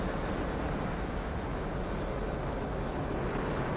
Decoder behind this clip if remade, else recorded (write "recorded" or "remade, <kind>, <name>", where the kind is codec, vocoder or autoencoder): recorded